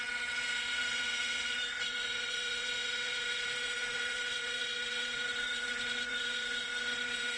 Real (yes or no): no